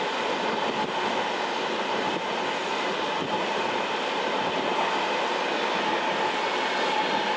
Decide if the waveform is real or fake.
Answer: real